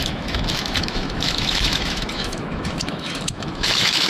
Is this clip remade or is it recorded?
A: remade